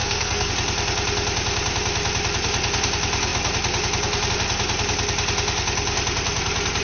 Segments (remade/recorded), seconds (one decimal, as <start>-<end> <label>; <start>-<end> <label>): 0.0-0.5 remade; 0.5-6.8 recorded